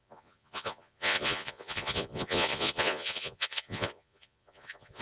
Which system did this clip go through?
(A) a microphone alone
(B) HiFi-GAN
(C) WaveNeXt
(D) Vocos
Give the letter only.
D